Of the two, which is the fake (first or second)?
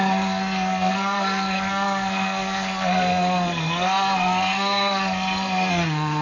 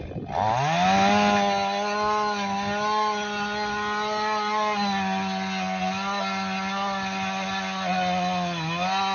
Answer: first